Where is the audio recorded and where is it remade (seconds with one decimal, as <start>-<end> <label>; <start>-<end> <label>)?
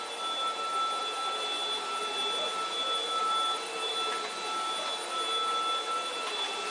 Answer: 0.0-3.2 recorded; 3.2-3.9 remade; 3.9-6.7 recorded